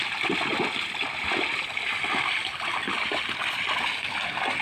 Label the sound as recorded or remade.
recorded